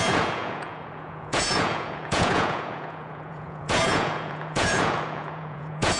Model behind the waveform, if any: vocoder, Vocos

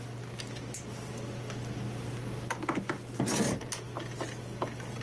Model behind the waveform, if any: none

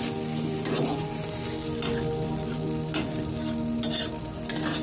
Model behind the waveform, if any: none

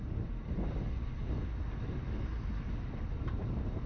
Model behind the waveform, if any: none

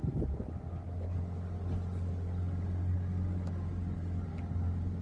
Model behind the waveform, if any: none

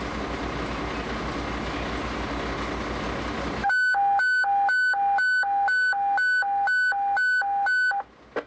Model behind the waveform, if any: none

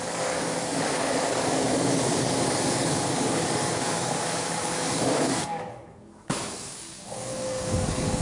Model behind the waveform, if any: codec, DAC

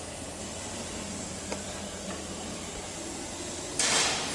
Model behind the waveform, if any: vocoder, BigVGAN v2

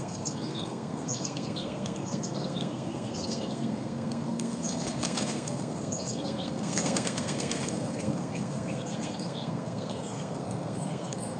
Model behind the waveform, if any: codec, SNAC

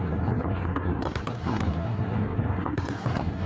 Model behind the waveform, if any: codec, SNAC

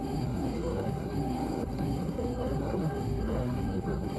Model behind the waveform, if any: codec, SNAC